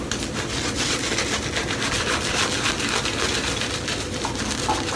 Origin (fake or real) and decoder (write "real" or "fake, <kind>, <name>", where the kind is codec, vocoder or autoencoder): real